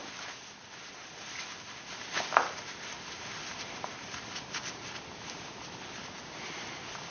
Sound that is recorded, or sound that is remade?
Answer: recorded